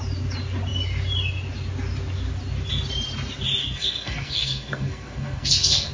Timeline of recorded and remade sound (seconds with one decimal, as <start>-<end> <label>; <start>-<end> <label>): 0.0-3.6 recorded; 3.6-5.9 remade